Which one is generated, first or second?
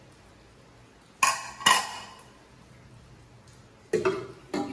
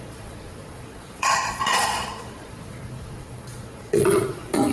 second